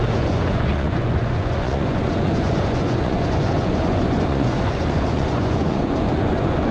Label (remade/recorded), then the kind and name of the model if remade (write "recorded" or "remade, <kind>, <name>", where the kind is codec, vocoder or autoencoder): remade, vocoder, Vocos